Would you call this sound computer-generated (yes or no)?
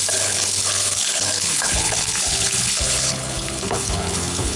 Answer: yes